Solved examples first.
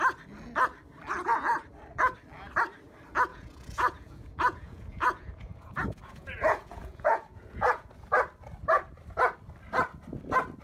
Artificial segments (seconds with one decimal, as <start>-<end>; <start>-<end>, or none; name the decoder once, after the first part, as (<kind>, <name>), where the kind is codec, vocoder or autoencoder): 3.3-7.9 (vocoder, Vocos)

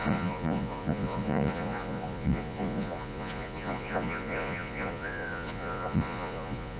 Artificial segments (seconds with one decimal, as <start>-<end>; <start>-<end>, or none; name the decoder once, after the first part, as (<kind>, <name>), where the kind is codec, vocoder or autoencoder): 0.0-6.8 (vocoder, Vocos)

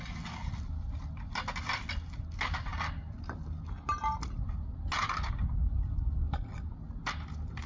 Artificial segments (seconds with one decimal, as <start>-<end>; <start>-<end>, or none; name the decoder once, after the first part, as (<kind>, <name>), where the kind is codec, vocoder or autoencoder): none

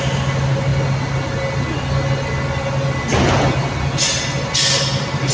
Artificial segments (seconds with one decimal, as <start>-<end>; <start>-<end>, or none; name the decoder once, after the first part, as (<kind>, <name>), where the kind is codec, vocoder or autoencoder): none